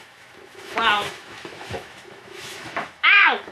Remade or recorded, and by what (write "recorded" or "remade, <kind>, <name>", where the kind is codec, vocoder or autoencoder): remade, autoencoder, DAC-VAE